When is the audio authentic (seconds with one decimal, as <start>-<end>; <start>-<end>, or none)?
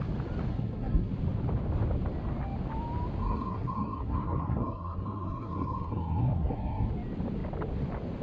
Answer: 0.0-0.5; 1.1-3.2; 6.9-8.2